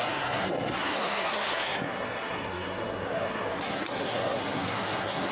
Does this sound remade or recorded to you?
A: remade